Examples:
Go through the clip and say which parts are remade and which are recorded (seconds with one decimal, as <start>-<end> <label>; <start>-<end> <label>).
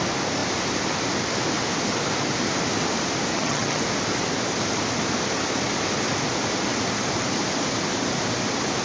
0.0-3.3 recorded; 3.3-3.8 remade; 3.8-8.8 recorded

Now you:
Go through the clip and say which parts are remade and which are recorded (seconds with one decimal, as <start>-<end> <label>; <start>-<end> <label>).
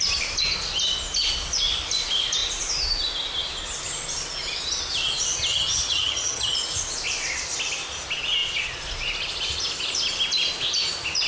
0.0-5.5 recorded; 5.5-6.5 remade; 6.5-11.3 recorded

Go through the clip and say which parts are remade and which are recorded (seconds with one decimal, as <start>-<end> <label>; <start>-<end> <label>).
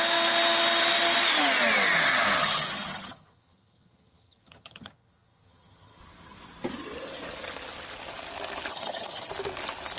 0.0-2.4 recorded; 2.4-6.0 remade; 6.0-8.7 recorded; 8.7-9.3 remade; 9.3-10.0 recorded